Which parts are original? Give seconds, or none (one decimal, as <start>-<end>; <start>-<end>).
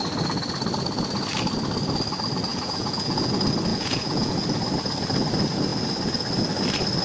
0.0-2.5; 3.3-3.7; 4.3-7.0